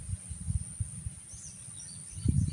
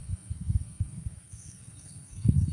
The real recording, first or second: first